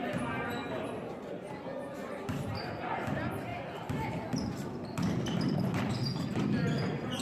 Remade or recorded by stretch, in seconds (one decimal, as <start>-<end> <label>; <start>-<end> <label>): 0.0-7.2 recorded